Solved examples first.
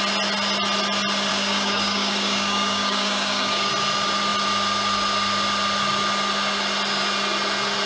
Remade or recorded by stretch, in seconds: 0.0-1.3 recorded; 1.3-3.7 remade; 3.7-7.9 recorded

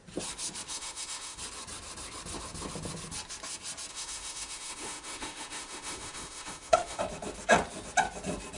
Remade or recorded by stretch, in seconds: 0.0-0.7 recorded; 0.7-1.4 remade; 1.4-3.9 recorded; 3.9-7.0 remade; 7.0-8.6 recorded

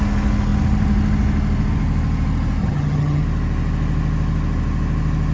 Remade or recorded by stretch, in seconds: 0.0-2.6 recorded; 2.6-3.2 remade; 3.2-5.3 recorded

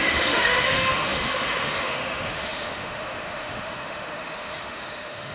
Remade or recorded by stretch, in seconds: 0.0-5.3 remade

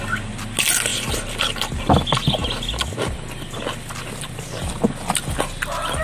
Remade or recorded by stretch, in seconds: 0.0-6.0 recorded

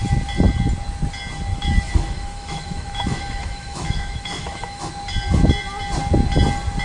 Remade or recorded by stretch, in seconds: 0.0-1.5 recorded; 1.5-4.9 remade; 4.9-6.8 recorded